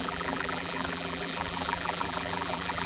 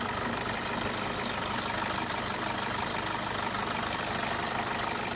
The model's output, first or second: first